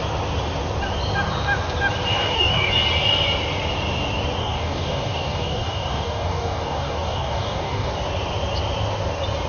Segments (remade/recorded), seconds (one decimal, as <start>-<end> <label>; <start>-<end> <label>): 0.0-2.1 recorded; 2.1-2.7 remade; 2.7-4.4 recorded; 4.4-7.9 remade; 7.9-9.5 recorded